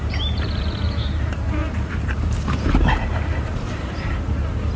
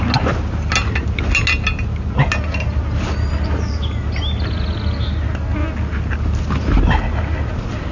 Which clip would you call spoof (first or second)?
first